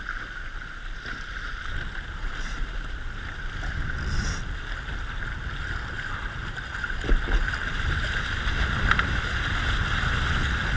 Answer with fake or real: real